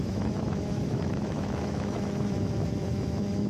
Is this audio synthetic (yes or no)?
yes